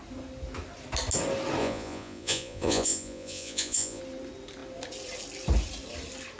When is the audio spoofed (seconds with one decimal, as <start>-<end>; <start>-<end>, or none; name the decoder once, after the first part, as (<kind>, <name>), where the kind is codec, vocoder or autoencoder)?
1.6-4.0 (vocoder, Vocos)